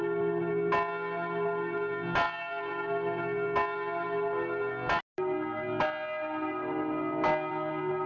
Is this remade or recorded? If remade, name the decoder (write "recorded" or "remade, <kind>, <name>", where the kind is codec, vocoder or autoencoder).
recorded